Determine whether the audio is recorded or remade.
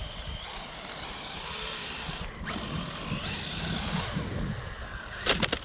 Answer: recorded